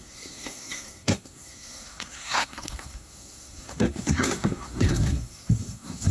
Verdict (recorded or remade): remade